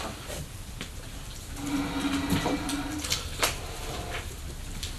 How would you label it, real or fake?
real